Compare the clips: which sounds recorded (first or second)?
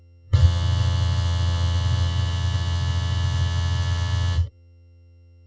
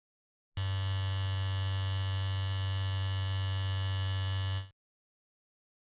second